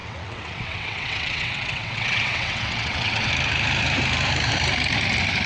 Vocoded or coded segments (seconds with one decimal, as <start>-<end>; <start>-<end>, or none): 0.0-3.3